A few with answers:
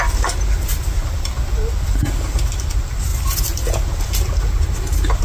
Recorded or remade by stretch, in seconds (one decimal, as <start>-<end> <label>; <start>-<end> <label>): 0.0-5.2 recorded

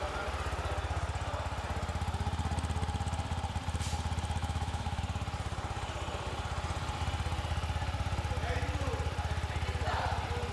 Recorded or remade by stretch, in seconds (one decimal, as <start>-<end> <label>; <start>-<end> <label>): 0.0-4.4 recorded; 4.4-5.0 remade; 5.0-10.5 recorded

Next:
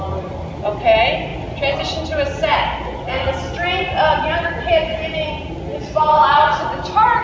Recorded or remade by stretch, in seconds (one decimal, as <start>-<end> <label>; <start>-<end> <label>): 0.0-7.2 recorded